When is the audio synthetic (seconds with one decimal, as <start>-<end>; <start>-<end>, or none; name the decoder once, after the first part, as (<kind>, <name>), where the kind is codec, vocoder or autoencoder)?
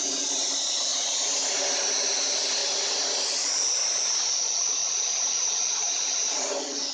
0.0-0.9 (vocoder, BigVGAN v2); 1.7-2.6; 3.3-6.9